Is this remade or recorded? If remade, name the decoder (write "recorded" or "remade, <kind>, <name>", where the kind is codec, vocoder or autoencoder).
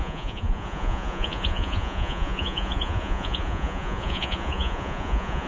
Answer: remade, vocoder, Vocos